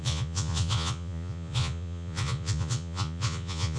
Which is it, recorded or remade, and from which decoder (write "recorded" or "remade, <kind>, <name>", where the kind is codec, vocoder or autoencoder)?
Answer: remade, vocoder, Vocos